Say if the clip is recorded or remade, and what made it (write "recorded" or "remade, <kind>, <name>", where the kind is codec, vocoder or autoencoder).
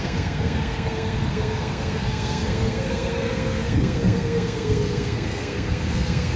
remade, codec, SNAC